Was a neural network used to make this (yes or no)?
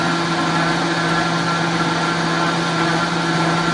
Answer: no